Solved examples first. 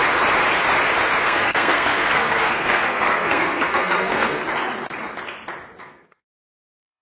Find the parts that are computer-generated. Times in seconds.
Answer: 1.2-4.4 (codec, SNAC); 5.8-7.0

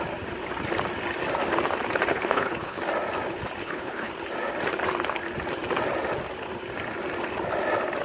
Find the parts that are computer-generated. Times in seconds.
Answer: 2.1-2.8 (codec, HILCodec); 3.6-4.1

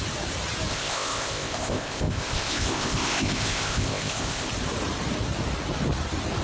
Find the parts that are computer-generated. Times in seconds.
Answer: 0.7-4.5 (codec, ZipCodec)

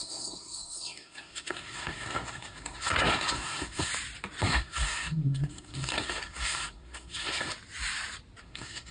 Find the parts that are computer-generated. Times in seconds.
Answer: 0.0-3.9 (codec, SNAC); 4.4-7.5; 8.4-8.9

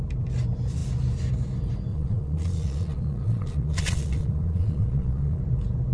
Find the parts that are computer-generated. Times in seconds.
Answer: 1.9-5.4 (vocoder, Vocos)

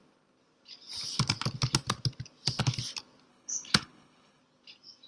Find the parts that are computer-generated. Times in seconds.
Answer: 3.3-4.4 (codec, HILCodec)

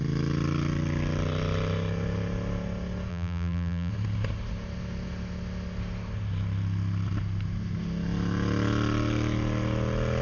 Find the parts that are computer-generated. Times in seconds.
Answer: 3.1-3.9 (vocoder, BigVGAN v2)